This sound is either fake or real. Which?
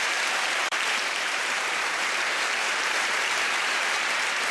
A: fake